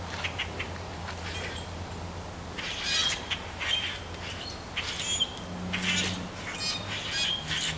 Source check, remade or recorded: recorded